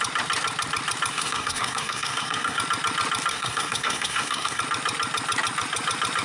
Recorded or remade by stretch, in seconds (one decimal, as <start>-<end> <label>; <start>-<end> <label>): 0.0-1.1 recorded; 1.1-2.6 remade; 2.6-3.3 recorded; 3.3-4.6 remade; 4.6-6.2 recorded